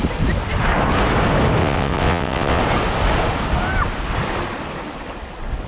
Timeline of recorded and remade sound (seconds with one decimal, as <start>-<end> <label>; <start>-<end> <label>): 0.0-1.6 recorded; 1.6-2.6 remade; 2.6-5.7 recorded